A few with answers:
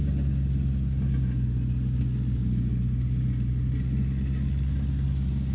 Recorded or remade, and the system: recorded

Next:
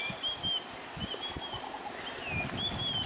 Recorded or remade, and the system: recorded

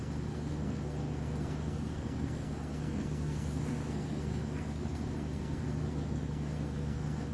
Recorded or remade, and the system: remade, codec, SNAC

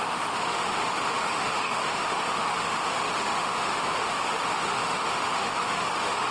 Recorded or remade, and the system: remade, autoencoder, DAC-VAE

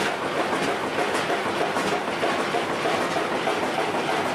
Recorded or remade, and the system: recorded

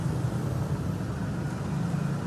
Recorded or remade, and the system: recorded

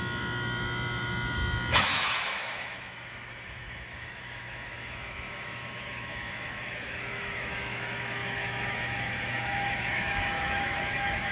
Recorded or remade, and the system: remade, autoencoder, DAC-VAE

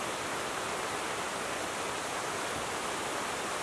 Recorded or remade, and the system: recorded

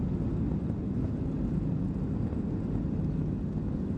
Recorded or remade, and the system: recorded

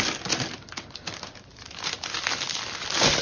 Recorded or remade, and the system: recorded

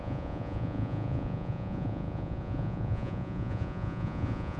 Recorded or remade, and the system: remade, vocoder, Vocos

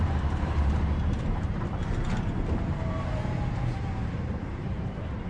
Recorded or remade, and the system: remade, vocoder, BigVGAN v2